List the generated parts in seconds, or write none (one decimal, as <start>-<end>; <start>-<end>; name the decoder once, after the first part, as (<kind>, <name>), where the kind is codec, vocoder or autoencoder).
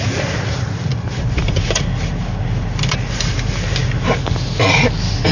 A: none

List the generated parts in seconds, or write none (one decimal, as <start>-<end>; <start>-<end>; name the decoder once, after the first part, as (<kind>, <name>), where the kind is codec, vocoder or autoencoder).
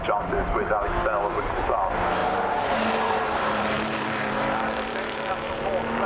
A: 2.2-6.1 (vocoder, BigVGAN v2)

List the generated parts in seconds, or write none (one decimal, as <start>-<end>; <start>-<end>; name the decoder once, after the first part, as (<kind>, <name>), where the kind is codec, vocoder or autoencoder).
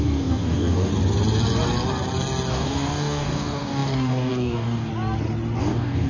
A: 0.0-0.9 (codec, DAC); 2.5-4.9; 5.6-6.1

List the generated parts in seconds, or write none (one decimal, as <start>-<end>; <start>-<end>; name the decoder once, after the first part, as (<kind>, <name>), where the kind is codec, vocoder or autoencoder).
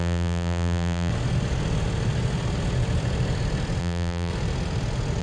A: 0.0-1.1 (vocoder, BigVGAN v2); 3.8-4.3